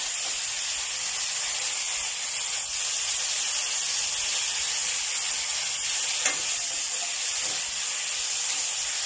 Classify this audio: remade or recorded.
recorded